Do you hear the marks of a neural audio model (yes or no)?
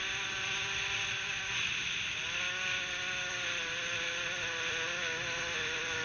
no